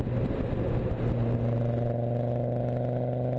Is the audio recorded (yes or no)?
yes